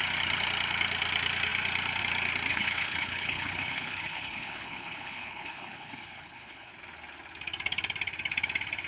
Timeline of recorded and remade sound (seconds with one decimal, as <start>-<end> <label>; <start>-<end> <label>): 0.0-2.5 recorded; 2.5-6.7 remade; 6.7-8.9 recorded